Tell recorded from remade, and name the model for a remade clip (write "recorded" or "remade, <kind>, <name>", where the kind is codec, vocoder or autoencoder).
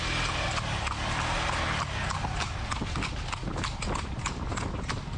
recorded